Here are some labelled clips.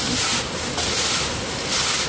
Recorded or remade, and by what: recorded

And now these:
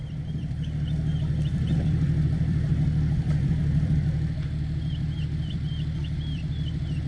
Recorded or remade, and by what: remade, vocoder, BigVGAN v2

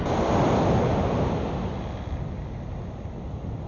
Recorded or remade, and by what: recorded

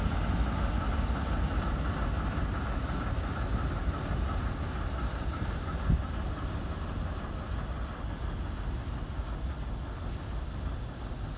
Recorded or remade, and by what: recorded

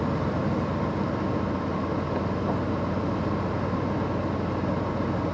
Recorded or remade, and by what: recorded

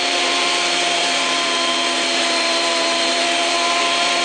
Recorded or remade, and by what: remade, vocoder, BigVGAN v2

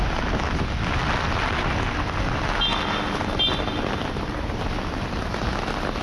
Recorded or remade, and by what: recorded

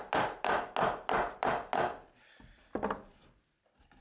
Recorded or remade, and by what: recorded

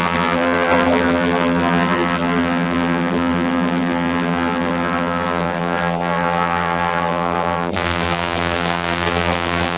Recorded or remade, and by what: remade, vocoder, BigVGAN v2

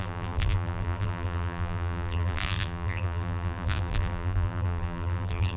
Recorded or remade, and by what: remade, vocoder, BigVGAN v2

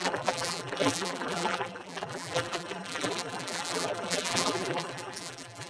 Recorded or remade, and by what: remade, vocoder, BigVGAN v2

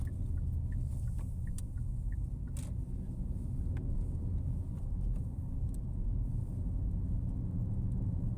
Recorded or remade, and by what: recorded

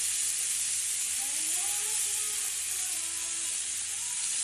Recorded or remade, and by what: recorded